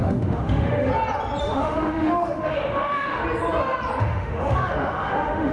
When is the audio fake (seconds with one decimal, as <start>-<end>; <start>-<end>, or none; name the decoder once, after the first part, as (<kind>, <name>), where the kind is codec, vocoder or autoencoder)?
0.0-0.9 (autoencoder, DAC-VAE); 1.4-3.2; 4.0-5.5